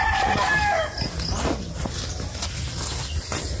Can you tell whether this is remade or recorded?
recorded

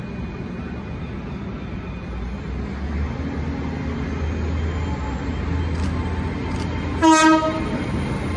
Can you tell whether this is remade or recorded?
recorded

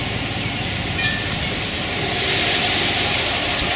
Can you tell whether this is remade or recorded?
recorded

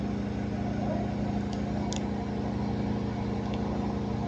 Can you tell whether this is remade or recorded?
recorded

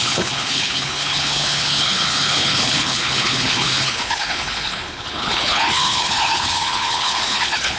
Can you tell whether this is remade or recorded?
remade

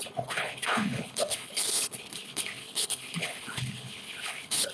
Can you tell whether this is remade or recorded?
remade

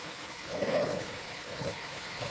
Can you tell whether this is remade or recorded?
remade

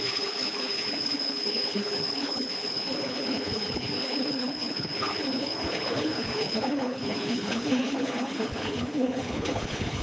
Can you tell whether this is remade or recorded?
remade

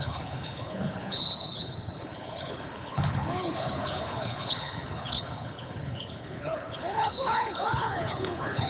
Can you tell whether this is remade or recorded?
remade